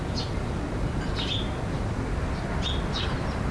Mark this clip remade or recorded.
recorded